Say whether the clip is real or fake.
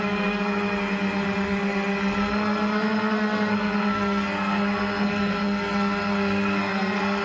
fake